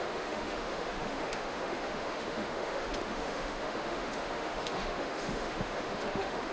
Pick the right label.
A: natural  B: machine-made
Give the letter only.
B